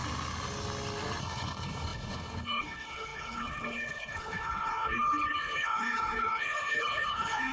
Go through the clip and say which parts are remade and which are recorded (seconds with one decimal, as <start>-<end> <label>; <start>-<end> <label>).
0.0-1.2 recorded; 1.2-7.5 remade